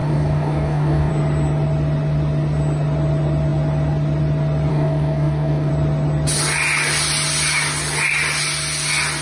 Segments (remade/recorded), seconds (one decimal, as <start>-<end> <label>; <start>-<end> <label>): 0.0-1.1 remade; 1.1-4.7 recorded; 4.7-5.7 remade; 5.7-9.2 recorded